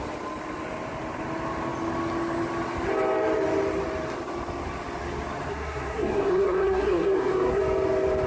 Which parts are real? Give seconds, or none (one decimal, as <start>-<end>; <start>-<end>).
0.0-5.5; 7.6-8.3

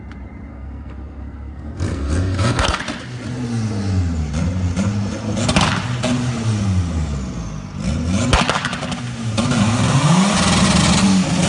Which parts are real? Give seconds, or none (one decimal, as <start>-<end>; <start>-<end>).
0.0-0.5; 2.8-11.5

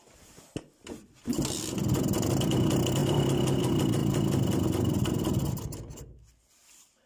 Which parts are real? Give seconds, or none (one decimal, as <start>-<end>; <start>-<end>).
0.0-7.1

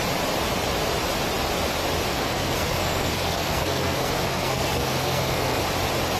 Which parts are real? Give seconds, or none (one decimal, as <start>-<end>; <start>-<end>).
0.0-2.1; 5.6-6.2

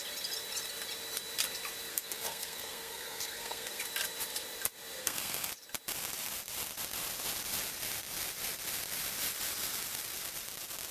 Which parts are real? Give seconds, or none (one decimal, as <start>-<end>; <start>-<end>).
0.0-1.9; 3.8-5.0; 5.5-10.9